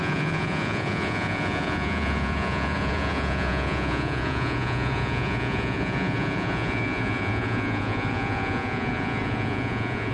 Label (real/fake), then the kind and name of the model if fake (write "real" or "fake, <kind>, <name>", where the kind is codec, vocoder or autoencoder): fake, vocoder, Vocos